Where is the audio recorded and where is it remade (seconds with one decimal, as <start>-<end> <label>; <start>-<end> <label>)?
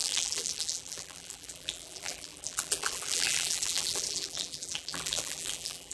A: 0.0-5.9 remade